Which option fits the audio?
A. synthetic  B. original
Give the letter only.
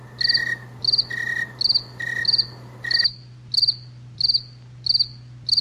B